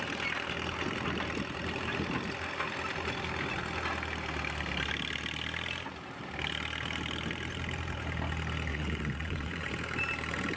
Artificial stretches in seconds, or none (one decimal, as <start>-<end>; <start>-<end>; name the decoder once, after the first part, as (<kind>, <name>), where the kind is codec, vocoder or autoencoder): 8.7-9.7 (vocoder, Vocos)